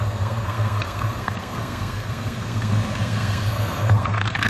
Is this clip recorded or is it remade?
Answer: remade